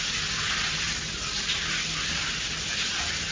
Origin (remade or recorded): recorded